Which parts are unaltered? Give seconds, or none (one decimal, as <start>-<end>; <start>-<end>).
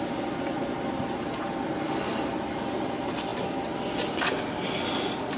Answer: 0.0-5.4